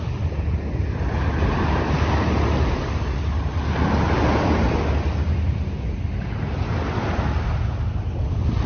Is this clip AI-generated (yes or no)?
no